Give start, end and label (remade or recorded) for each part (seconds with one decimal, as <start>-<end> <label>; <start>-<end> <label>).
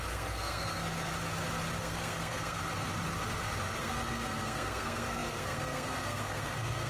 0.0-1.1 remade; 1.1-1.8 recorded; 1.8-2.6 remade; 2.6-3.8 recorded; 3.8-6.9 remade